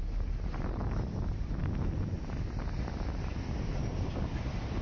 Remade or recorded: recorded